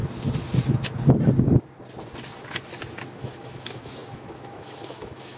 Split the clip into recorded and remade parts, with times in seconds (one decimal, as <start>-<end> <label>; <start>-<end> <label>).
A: 0.0-3.2 recorded; 3.2-5.4 remade